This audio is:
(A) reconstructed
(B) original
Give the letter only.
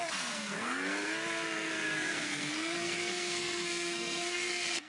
A